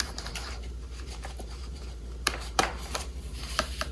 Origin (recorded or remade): remade